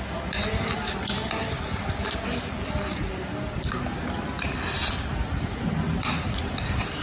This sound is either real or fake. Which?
real